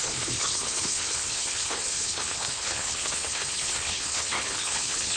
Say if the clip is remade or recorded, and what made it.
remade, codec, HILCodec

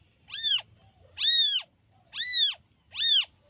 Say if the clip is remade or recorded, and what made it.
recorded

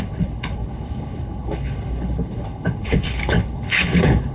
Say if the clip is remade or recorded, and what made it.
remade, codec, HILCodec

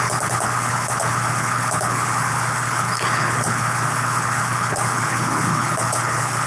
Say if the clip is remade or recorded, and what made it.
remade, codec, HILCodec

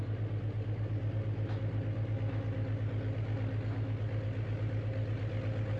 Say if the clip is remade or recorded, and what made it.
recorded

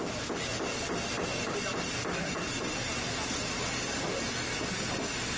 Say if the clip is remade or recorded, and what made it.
recorded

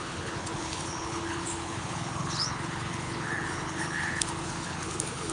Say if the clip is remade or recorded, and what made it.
remade, codec, HILCodec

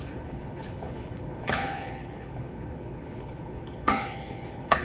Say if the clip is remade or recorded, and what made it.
remade, codec, HILCodec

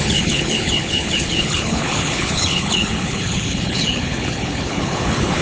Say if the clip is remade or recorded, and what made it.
remade, codec, HILCodec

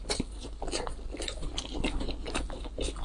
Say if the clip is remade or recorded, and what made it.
recorded